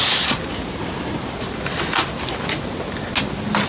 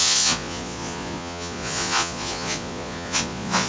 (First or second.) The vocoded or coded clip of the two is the second